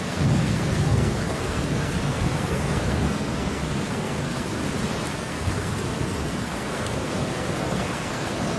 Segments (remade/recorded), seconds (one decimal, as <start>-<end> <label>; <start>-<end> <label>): 0.0-4.6 remade; 4.6-5.1 recorded; 5.1-8.6 remade